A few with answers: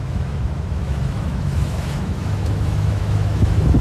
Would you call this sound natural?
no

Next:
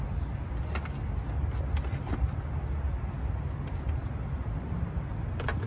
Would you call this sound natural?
yes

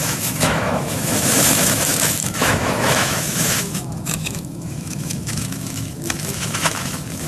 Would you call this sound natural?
no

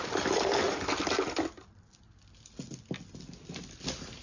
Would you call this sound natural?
yes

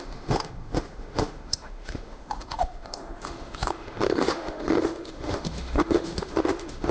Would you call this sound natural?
no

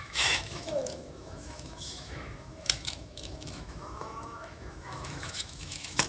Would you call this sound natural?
no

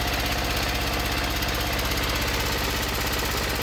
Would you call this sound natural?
yes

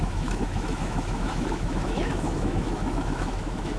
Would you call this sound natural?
no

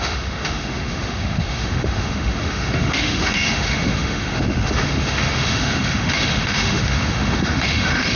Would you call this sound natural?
no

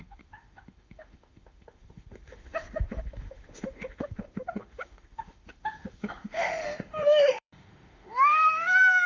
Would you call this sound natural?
no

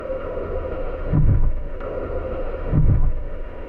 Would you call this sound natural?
no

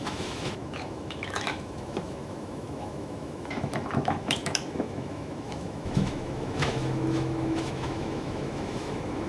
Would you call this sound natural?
no